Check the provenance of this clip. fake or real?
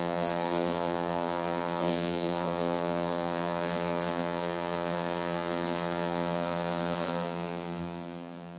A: fake